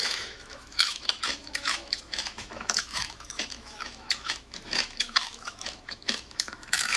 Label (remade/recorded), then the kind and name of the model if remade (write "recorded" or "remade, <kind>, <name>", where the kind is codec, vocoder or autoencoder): remade, autoencoder, DAC-VAE